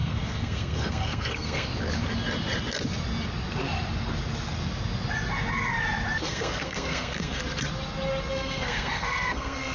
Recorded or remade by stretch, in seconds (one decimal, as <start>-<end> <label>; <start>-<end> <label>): 0.0-1.7 remade; 1.7-6.2 recorded; 6.2-7.4 remade; 7.4-8.3 recorded; 8.3-9.7 remade